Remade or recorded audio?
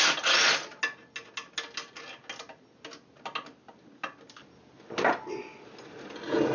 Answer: recorded